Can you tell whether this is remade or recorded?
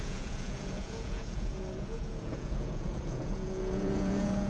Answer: remade